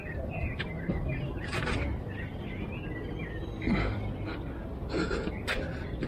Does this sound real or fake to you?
real